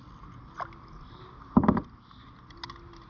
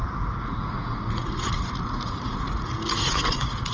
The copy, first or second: second